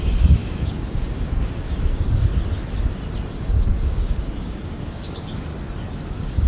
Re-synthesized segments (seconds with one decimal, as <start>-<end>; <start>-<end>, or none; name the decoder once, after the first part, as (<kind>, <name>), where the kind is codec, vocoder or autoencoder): 0.0-2.3 (codec, DAC); 3.3-5.5; 6.1-6.5